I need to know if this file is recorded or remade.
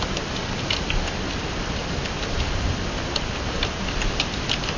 recorded